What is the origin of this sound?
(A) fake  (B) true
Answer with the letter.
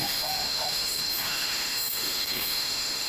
A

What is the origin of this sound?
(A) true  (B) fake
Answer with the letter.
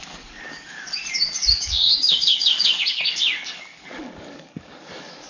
B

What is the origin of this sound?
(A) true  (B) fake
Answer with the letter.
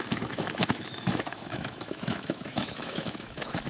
B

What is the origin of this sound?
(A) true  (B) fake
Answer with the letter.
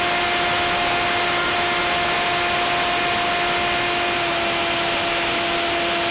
A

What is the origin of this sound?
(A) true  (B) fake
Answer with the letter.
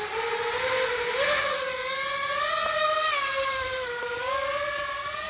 A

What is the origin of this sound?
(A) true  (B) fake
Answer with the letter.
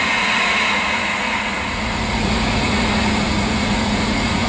B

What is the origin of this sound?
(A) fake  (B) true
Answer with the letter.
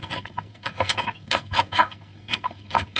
A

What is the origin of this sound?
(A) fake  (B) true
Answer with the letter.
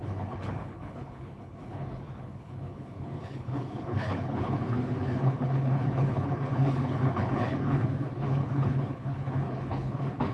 A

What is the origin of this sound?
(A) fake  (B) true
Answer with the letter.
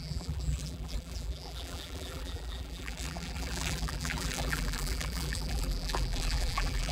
A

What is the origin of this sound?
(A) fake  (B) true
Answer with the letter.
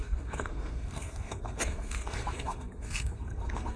A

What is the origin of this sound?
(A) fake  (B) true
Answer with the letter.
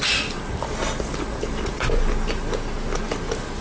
B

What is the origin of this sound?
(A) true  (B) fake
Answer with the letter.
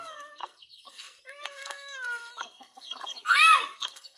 B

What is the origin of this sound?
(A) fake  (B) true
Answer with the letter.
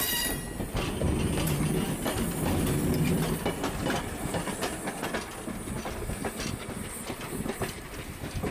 B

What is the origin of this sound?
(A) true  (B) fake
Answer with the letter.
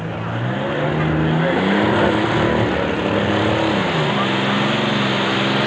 A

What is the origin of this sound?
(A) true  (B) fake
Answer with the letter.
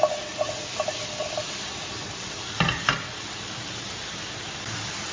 A